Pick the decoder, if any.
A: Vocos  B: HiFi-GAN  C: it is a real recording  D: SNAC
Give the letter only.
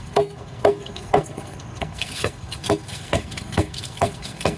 D